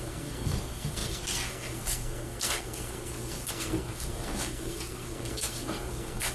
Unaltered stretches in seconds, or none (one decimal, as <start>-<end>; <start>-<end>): none